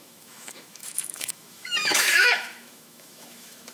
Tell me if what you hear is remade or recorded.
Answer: remade